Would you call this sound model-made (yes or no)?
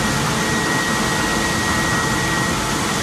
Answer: no